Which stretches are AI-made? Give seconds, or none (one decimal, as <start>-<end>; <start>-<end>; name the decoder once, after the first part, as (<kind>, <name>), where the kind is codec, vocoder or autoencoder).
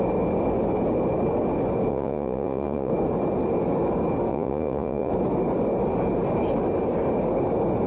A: 1.9-2.9 (vocoder, Vocos); 4.3-5.1